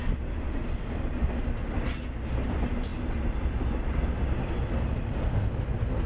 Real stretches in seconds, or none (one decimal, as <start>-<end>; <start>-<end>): 0.0-6.1